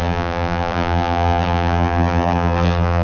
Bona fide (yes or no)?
no